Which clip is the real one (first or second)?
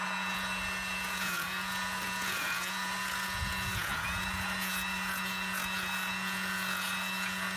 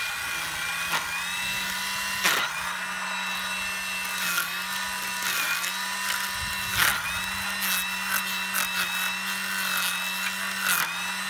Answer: second